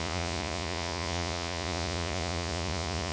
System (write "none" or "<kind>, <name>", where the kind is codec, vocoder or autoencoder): vocoder, Vocos